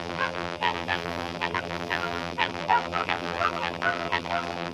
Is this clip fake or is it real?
fake